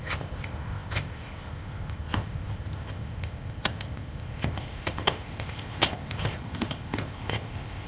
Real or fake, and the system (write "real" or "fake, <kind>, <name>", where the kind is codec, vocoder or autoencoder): fake, codec, ZipCodec